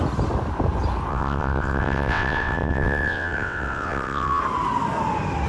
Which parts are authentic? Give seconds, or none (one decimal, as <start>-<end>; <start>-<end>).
0.0-1.1; 4.4-5.5